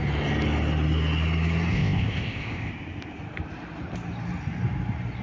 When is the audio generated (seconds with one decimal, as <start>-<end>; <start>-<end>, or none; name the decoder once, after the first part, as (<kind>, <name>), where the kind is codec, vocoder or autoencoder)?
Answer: 1.7-2.7 (codec, ZipCodec)